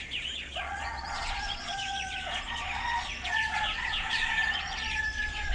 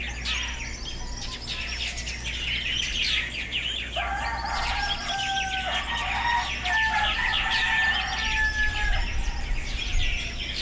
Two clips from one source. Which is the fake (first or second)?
first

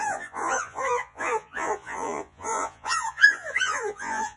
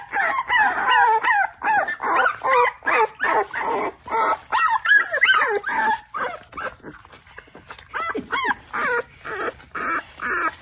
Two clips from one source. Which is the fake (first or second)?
first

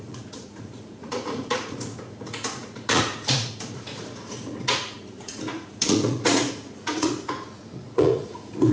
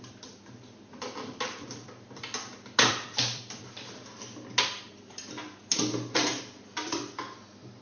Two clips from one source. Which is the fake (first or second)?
first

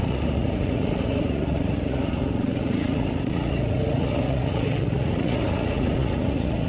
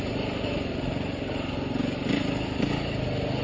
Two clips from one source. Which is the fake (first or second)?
first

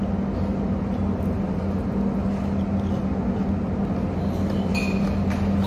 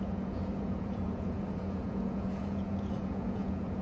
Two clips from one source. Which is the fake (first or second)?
second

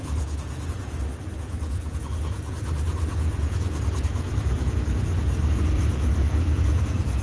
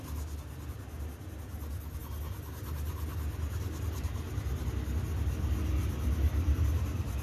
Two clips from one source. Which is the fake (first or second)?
first